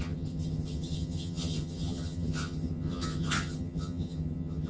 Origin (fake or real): fake